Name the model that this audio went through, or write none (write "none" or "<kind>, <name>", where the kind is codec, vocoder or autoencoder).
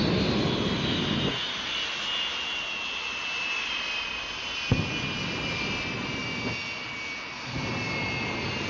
none